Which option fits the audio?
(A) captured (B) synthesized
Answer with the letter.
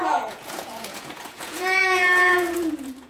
B